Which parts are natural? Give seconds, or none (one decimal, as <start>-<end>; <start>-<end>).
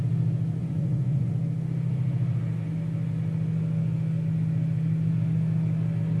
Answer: 0.0-0.6; 1.3-6.2